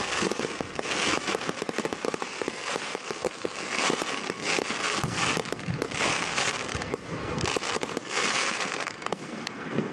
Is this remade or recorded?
remade